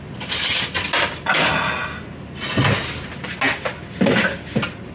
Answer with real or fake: real